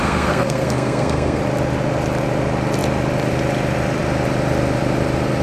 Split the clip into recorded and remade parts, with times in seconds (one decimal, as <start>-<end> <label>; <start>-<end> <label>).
0.0-1.4 remade; 1.4-5.4 recorded